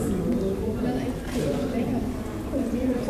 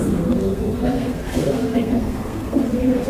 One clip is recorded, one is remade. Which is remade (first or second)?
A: second